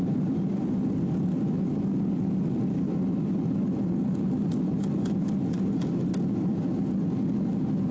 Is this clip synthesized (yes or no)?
no